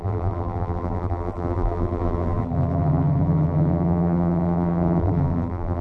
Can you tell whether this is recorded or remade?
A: remade